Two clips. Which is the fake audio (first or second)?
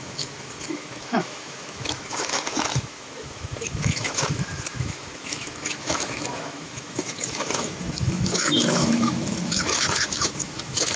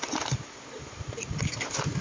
first